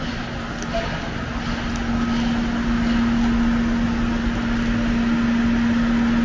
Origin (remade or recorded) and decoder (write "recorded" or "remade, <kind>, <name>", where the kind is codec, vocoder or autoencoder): recorded